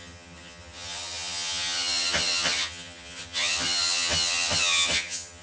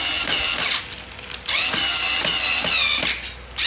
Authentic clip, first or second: second